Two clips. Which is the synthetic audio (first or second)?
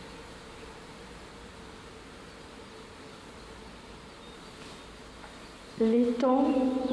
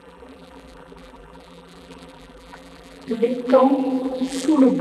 second